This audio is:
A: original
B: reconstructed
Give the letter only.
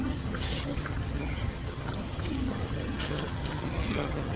B